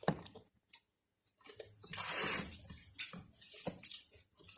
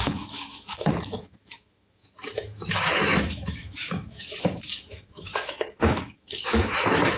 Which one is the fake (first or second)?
second